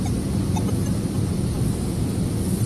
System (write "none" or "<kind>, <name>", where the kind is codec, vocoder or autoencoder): none